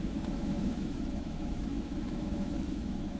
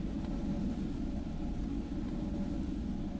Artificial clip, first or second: first